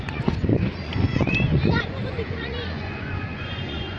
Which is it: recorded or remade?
remade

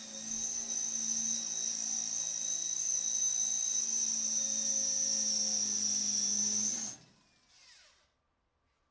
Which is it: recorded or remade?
recorded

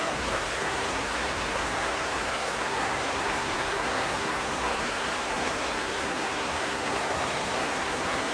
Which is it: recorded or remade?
remade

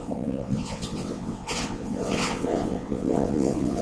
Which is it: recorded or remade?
remade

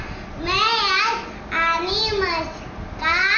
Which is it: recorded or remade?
recorded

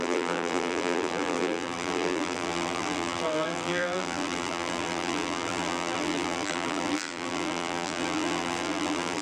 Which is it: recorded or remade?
remade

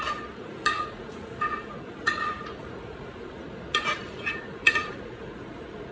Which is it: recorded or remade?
remade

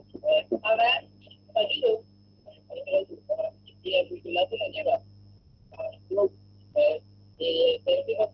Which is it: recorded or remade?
recorded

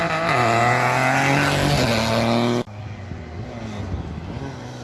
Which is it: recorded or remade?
recorded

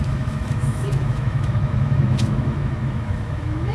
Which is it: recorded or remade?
remade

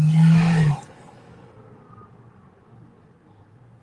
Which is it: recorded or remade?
recorded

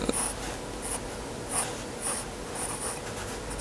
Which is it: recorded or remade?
recorded